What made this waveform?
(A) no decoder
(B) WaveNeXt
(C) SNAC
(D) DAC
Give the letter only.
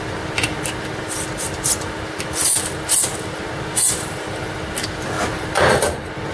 A